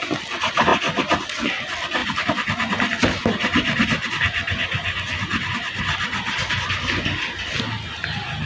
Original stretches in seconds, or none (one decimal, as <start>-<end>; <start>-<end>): 0.0-8.5